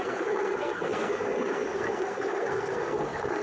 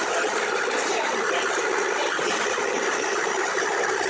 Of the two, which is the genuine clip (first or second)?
second